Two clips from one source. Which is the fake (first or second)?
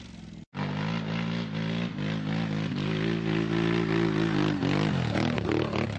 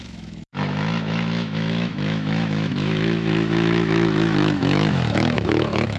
second